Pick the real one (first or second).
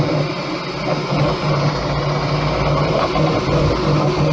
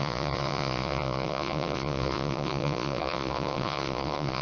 first